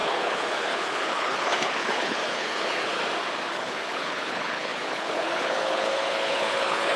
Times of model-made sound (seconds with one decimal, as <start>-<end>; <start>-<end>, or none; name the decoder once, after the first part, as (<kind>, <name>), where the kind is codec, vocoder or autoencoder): 0.0-3.0 (codec, HILCodec); 3.5-7.0